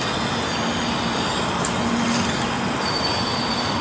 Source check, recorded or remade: recorded